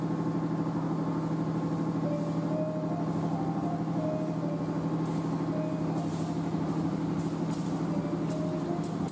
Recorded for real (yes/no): yes